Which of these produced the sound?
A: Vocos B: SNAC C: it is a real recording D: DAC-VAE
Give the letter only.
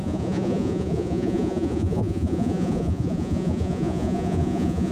A